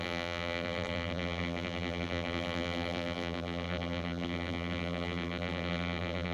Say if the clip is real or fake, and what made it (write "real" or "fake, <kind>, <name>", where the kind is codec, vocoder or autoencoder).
fake, vocoder, BigVGAN v2